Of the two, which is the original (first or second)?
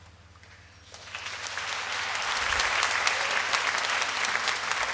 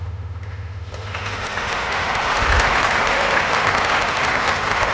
first